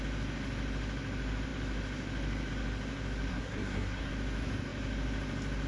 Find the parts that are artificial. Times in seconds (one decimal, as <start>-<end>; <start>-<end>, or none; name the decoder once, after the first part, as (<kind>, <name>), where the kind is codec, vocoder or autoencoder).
3.3-4.1 (codec, SNAC)